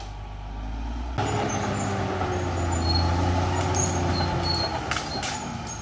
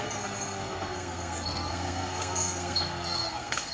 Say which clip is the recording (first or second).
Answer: first